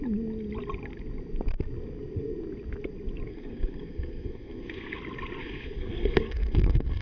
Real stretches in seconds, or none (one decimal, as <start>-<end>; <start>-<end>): 0.0-3.3; 5.0-5.4